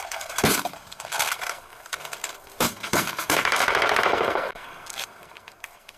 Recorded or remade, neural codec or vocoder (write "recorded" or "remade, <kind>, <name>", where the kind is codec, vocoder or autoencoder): remade, codec, SNAC